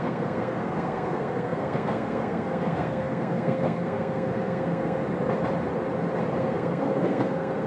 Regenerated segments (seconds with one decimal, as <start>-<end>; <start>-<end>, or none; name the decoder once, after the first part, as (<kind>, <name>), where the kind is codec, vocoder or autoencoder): 0.0-5.0 (codec, SNAC); 6.4-7.7